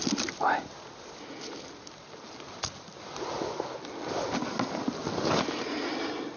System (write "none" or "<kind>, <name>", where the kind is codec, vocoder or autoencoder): none